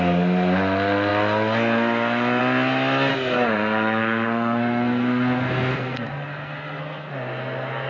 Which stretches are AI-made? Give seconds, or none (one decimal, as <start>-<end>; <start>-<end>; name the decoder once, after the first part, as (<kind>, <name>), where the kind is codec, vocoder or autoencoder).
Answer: 3.1-7.1 (codec, SNAC)